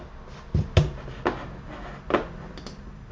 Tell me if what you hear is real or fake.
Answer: real